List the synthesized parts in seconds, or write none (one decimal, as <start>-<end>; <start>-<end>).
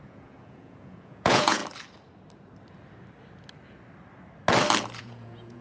0.0-1.6; 5.0-5.6